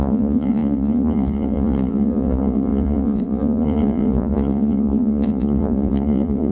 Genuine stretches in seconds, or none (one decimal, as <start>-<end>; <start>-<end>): none